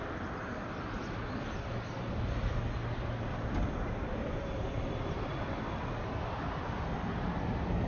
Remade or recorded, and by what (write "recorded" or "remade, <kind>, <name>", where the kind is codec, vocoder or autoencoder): recorded